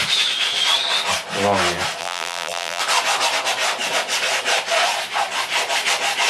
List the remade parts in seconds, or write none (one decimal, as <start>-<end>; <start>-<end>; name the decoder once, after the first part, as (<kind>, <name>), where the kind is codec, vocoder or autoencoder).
2.0-2.8 (vocoder, BigVGAN v2)